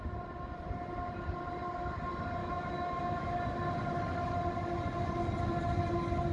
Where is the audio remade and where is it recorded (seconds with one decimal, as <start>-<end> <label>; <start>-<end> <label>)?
0.0-2.4 recorded; 2.4-3.3 remade; 3.3-6.3 recorded